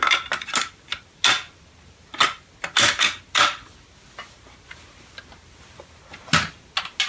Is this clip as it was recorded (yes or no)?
yes